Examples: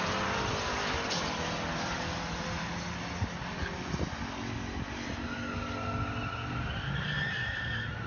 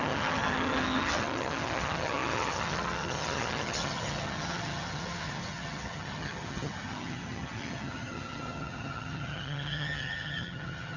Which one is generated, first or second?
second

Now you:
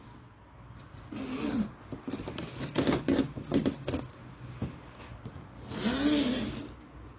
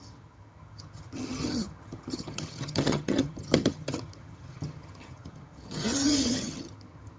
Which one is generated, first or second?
second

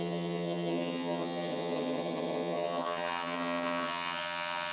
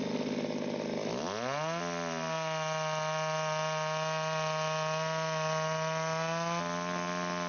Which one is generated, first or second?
first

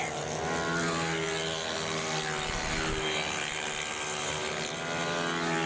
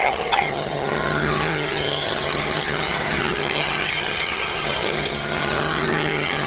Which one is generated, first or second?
second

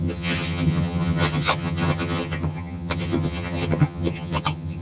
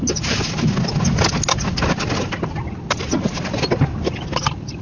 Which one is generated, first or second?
first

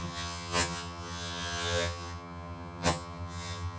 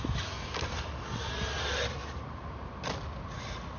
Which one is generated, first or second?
first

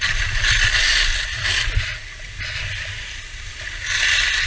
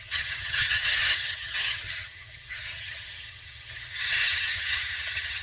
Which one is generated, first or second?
second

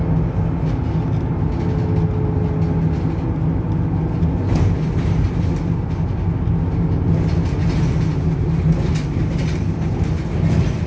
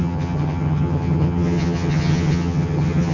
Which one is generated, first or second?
second